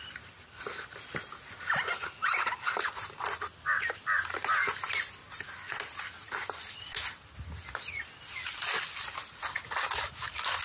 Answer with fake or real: real